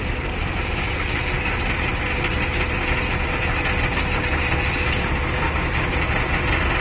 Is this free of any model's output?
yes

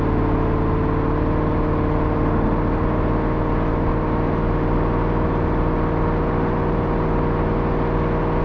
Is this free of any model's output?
yes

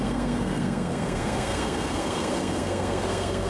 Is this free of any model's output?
no